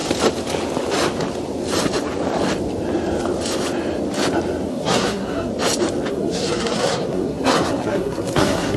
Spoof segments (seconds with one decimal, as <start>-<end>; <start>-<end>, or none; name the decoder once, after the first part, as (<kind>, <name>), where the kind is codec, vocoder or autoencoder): 4.7-5.5 (codec, SNAC); 6.1-8.8